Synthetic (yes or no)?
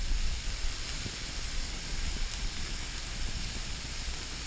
no